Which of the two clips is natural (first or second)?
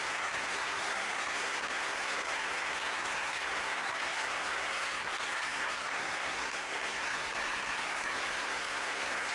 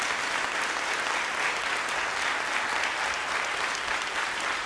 second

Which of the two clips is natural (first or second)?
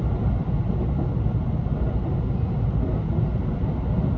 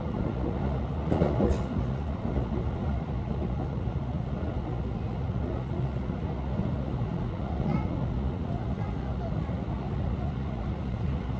first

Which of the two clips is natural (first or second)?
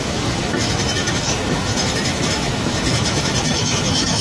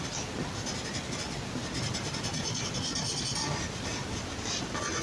second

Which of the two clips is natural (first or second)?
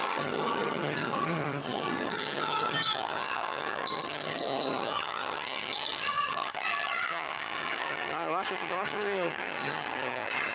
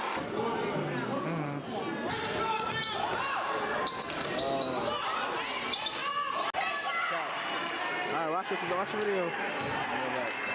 second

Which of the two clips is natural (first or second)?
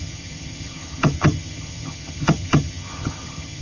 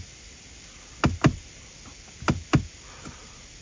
second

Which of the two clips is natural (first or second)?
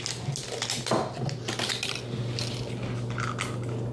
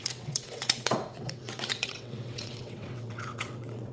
first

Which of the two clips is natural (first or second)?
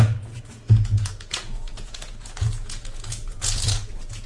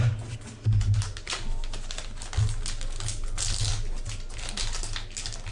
second